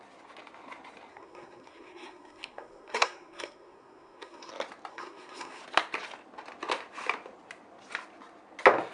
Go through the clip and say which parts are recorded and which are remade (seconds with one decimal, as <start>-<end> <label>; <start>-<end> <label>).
0.0-1.1 recorded; 1.1-4.5 remade; 4.5-4.9 recorded; 4.9-5.6 remade; 5.6-8.9 recorded